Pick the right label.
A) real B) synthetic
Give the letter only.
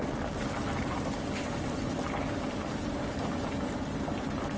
A